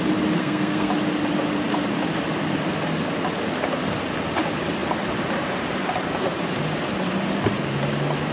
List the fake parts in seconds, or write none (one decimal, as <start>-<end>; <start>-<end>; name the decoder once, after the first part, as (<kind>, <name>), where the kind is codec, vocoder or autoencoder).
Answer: 0.4-0.9 (codec, SNAC)